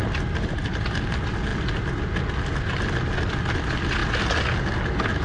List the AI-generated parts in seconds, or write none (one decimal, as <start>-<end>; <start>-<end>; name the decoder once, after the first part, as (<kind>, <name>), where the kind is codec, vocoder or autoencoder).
none